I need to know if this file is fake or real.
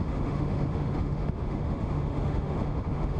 fake